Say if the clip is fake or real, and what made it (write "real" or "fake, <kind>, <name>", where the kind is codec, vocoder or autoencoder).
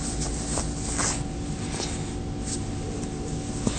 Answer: real